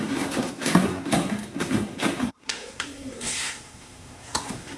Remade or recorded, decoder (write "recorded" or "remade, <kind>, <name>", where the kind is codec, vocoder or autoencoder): remade, codec, SNAC